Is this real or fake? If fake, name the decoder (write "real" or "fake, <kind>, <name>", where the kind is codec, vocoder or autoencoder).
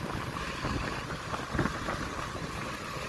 real